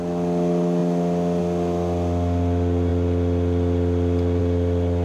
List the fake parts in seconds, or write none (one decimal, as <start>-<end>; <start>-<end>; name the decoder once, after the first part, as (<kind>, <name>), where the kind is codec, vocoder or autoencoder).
none